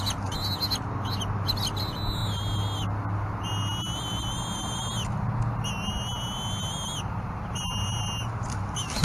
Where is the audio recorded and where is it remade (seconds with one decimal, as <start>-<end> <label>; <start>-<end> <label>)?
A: 0.0-9.0 recorded

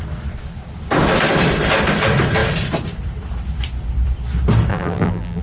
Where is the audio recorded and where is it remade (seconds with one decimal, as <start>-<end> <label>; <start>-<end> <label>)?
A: 0.0-4.7 recorded; 4.7-5.4 remade

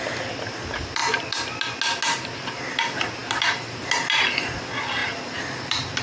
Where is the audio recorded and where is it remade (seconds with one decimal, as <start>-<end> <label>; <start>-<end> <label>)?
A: 0.0-5.0 recorded; 5.0-6.0 remade